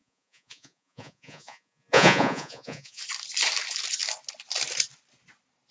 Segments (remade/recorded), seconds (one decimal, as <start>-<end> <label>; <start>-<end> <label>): 0.0-3.0 remade; 3.0-5.7 recorded